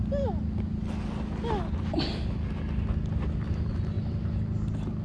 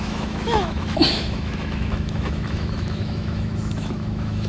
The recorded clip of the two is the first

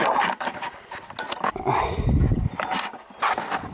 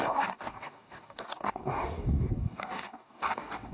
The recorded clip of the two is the first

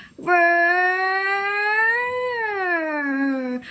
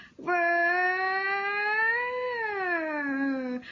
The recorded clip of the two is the second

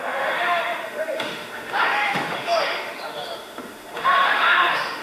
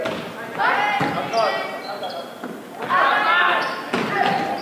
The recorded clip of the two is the second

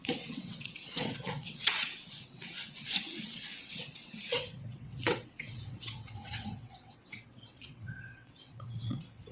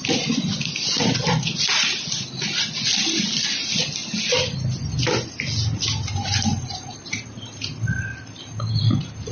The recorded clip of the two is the second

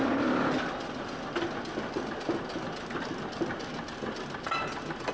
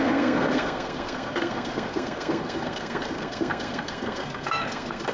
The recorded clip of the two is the first